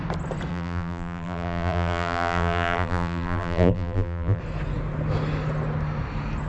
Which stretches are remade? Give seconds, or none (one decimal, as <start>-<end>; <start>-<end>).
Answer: 0.5-4.4

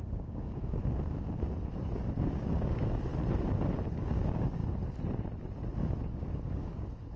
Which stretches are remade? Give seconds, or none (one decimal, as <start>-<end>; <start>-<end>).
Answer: 0.0-0.8; 2.2-3.1; 3.9-4.6; 6.1-7.2

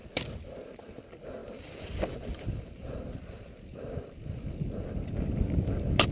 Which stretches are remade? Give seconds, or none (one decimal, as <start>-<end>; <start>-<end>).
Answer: 0.0-0.7; 1.4-5.1

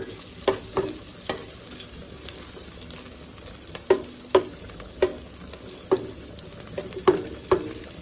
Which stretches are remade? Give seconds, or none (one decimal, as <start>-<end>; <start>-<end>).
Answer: none

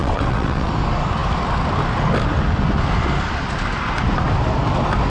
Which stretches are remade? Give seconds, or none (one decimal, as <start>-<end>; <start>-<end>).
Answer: 0.0-0.7

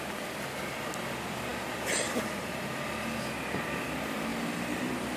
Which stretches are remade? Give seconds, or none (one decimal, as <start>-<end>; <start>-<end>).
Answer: 1.5-2.1; 4.3-4.8